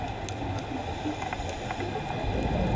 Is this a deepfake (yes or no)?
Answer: no